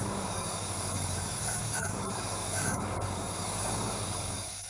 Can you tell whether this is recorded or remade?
remade